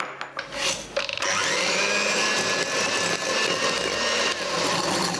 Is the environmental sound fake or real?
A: real